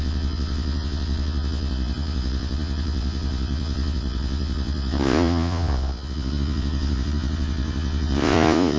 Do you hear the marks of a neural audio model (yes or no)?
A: yes